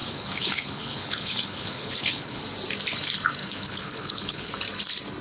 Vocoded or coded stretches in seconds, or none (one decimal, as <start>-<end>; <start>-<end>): 0.0-2.4; 3.4-4.5

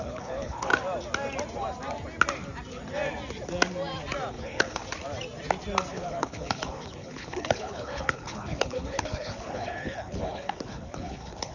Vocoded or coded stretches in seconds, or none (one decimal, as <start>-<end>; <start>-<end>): 0.0-0.7; 4.3-4.8; 5.9-11.5

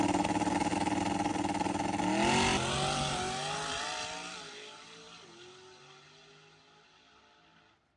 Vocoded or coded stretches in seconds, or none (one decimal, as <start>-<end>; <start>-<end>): none

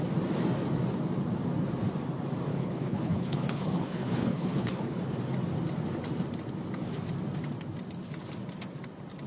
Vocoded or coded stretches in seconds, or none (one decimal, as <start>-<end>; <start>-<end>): 2.5-5.0

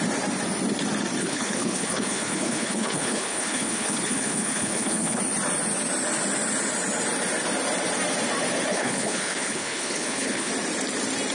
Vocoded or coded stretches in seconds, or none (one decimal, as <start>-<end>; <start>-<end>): 1.2-5.2; 8.7-10.5